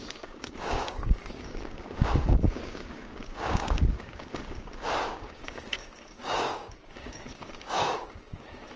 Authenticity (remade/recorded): remade